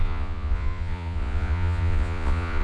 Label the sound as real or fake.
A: fake